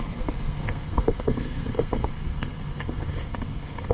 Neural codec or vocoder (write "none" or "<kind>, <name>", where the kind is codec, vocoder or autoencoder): codec, SNAC